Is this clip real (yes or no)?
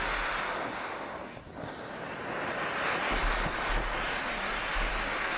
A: yes